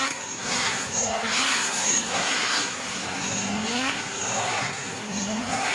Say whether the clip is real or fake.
fake